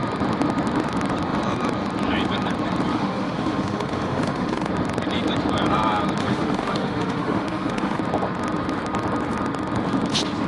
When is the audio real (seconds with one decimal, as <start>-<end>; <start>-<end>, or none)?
0.0-2.9; 4.7-6.2; 8.0-10.5